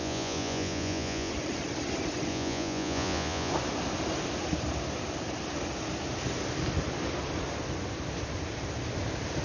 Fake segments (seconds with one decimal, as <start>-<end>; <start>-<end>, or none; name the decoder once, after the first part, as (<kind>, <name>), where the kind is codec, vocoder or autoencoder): 0.0-1.3 (vocoder, Vocos); 2.3-3.5